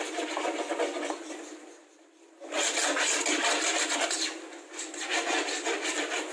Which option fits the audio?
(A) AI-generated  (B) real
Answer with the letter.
B